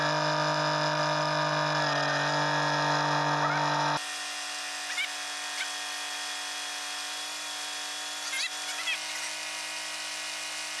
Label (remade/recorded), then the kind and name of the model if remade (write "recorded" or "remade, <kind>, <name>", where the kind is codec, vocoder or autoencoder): recorded